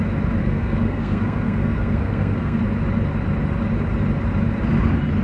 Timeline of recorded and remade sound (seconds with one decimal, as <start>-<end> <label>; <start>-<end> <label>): 0.0-0.4 recorded; 0.4-2.6 remade; 2.6-5.2 recorded